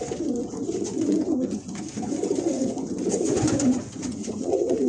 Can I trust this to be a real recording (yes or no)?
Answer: no